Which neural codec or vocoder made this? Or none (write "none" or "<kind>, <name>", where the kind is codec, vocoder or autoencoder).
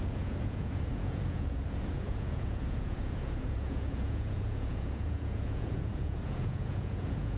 vocoder, Vocos